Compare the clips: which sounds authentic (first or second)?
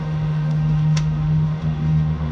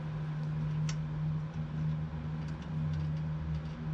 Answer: second